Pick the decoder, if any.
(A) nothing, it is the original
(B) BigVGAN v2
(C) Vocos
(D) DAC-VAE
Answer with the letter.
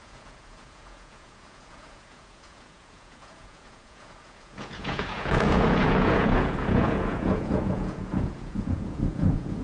C